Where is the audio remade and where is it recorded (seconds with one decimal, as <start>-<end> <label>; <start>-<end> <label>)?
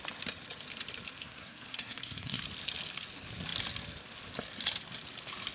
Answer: 0.0-1.2 recorded; 1.2-2.4 remade; 2.4-5.5 recorded